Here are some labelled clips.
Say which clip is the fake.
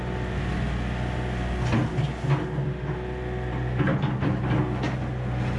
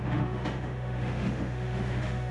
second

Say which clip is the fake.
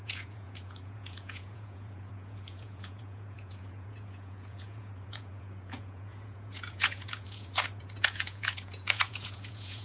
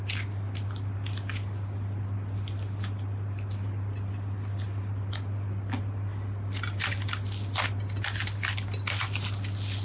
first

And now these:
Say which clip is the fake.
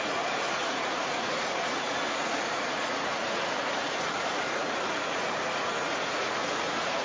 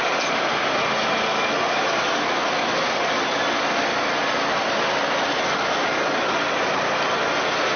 first